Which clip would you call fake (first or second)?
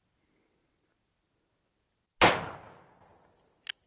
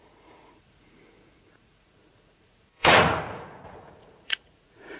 second